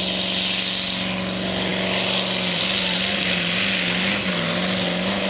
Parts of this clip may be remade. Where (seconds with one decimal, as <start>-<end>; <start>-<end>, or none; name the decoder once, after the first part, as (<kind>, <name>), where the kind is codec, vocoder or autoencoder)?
none